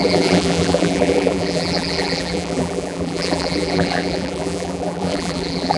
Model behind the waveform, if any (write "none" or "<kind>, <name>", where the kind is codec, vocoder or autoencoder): vocoder, BigVGAN v2